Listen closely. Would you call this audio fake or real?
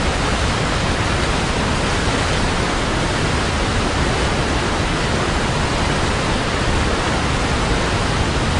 real